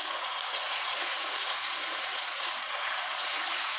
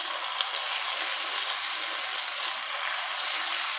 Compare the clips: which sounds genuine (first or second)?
second